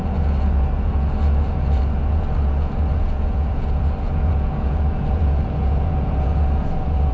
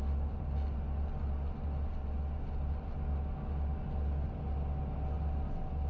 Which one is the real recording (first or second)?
second